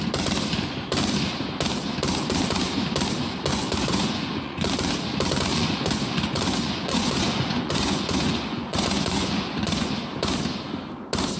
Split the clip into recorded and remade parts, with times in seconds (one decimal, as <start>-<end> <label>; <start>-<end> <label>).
0.0-3.5 recorded; 3.5-4.7 remade; 4.7-5.5 recorded; 5.5-9.9 remade; 9.9-11.4 recorded